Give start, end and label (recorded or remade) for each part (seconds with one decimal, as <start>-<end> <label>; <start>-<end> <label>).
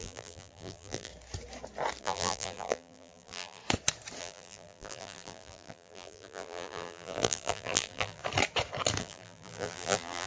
0.0-1.1 remade; 1.1-2.0 recorded; 2.0-3.6 remade; 3.6-4.2 recorded; 4.2-8.2 remade; 8.2-9.0 recorded; 9.0-10.3 remade